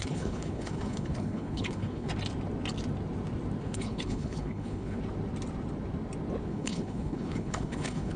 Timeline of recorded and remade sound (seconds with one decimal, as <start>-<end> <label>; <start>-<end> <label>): 0.0-2.1 remade; 2.1-3.6 recorded; 3.6-5.0 remade; 5.0-6.4 recorded; 6.4-8.2 remade

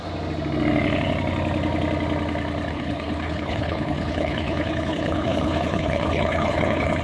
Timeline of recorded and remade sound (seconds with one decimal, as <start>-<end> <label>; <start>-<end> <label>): 0.0-2.7 recorded; 2.7-7.0 remade

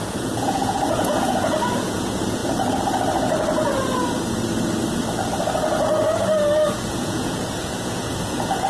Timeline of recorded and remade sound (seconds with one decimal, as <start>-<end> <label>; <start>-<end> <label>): 0.0-2.4 remade; 2.4-6.9 recorded; 6.9-8.7 remade

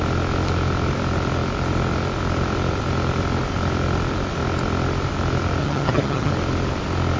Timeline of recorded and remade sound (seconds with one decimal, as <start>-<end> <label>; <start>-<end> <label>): 0.0-5.6 recorded; 5.6-6.3 remade; 6.3-7.2 recorded

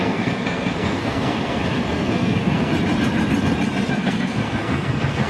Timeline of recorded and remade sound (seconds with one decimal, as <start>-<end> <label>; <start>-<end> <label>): 0.0-2.7 remade; 2.7-3.9 recorded; 3.9-5.3 remade

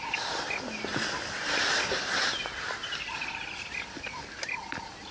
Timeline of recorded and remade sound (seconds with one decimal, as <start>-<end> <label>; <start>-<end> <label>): 0.0-5.1 recorded

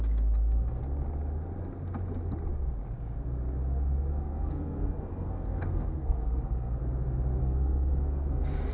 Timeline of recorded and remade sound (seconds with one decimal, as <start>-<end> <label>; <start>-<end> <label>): 0.0-0.8 remade; 0.8-4.1 recorded; 4.1-6.8 remade; 6.8-7.4 recorded; 7.4-8.7 remade

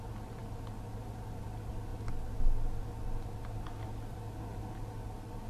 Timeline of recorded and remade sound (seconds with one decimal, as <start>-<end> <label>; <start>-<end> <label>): 0.0-5.5 recorded